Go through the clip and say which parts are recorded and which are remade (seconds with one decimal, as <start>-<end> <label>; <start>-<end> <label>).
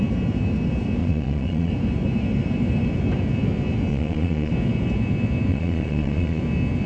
0.0-1.0 recorded; 1.0-1.7 remade; 1.7-3.9 recorded; 3.9-4.5 remade; 4.5-5.5 recorded; 5.5-6.4 remade; 6.4-6.9 recorded